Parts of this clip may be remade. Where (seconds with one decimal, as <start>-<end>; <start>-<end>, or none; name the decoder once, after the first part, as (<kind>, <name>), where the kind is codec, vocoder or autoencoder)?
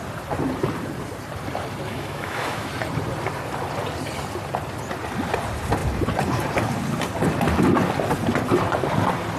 1.9-2.7 (autoencoder, DAC-VAE)